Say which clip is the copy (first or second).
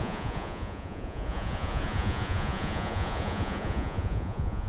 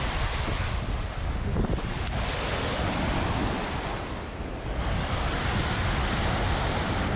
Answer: first